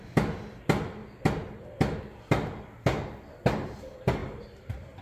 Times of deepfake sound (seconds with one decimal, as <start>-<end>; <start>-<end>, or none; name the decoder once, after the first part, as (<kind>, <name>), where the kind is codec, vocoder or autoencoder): none